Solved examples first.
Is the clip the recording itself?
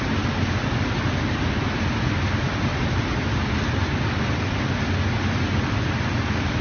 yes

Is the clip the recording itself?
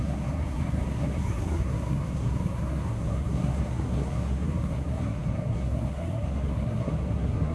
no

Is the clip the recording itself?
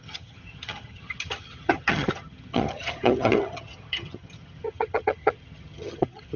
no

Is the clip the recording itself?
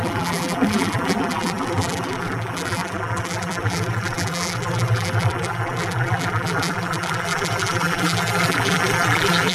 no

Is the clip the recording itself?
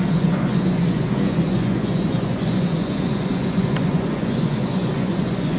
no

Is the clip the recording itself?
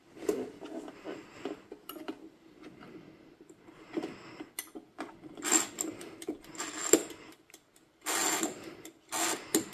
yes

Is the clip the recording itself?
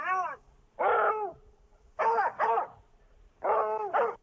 yes